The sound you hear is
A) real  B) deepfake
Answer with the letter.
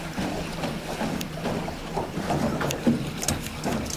A